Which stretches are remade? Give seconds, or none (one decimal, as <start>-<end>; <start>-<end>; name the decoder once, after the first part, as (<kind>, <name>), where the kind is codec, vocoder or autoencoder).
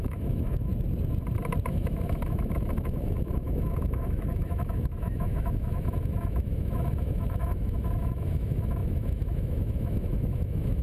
0.0-0.7 (autoencoder, DAC-VAE); 1.7-10.8